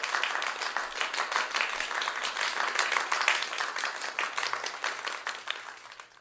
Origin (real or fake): real